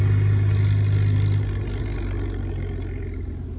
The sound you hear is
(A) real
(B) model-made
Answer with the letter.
A